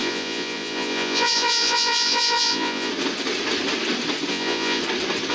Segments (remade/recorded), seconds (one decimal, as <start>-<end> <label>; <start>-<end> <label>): 0.0-2.9 remade; 2.9-4.3 recorded; 4.3-4.8 remade; 4.8-5.3 recorded